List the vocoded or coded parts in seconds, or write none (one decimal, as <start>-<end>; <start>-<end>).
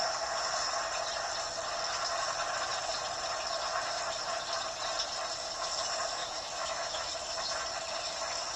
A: 6.2-7.1